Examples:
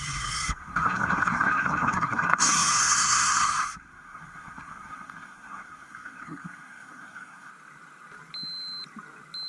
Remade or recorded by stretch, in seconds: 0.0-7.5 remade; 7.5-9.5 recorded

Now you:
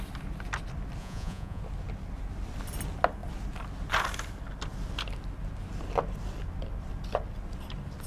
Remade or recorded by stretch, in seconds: 0.0-1.0 recorded; 1.0-1.6 remade; 1.6-8.1 recorded

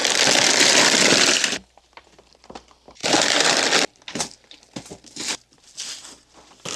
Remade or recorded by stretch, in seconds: 0.0-3.0 remade; 3.0-6.0 recorded; 6.0-6.8 remade

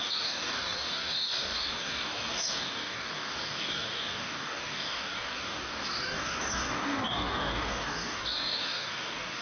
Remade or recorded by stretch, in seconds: 0.0-9.4 remade

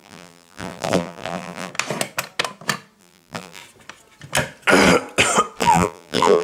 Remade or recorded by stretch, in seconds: 0.0-1.7 remade; 1.7-3.0 recorded; 3.0-3.6 remade; 3.6-5.6 recorded; 5.6-6.4 remade

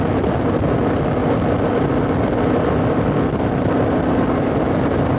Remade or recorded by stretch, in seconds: 0.0-5.2 recorded